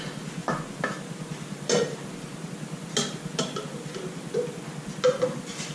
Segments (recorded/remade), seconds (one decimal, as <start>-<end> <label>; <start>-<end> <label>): 0.0-5.7 recorded

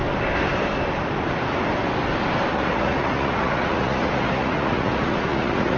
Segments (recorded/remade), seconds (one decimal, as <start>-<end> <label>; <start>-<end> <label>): 0.0-2.5 recorded; 2.5-5.8 remade

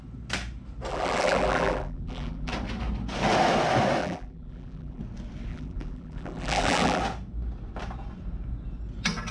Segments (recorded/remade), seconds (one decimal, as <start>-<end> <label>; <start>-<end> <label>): 0.0-0.9 recorded; 0.9-2.5 remade; 2.5-4.0 recorded; 4.0-5.0 remade; 5.0-5.5 recorded; 5.5-7.0 remade; 7.0-9.3 recorded

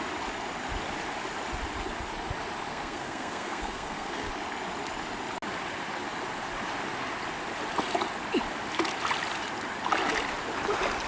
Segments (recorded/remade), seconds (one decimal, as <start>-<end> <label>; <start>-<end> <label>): 0.0-2.7 recorded; 2.7-4.3 remade; 4.3-11.1 recorded

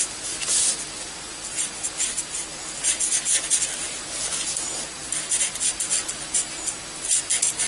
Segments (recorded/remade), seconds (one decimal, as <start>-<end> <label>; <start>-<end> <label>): 0.0-7.7 recorded

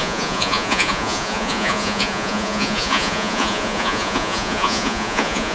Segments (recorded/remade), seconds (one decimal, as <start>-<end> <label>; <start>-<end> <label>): 0.0-5.5 remade

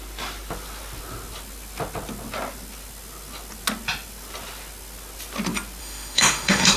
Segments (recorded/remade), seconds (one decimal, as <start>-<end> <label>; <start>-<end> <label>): 0.0-5.8 recorded; 5.8-6.8 remade

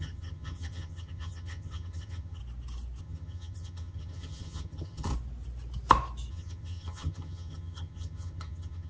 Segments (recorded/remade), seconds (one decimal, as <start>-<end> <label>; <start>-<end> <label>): 0.0-2.4 remade; 2.4-3.0 recorded; 3.0-5.1 remade; 5.1-6.3 recorded; 6.3-8.9 remade